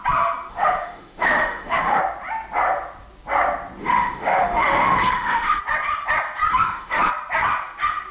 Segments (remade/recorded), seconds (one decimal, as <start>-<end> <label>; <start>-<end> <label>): 0.0-0.5 recorded; 0.5-2.0 remade; 2.0-3.8 recorded; 3.8-5.6 remade; 5.6-6.5 recorded; 6.5-7.1 remade; 7.1-8.1 recorded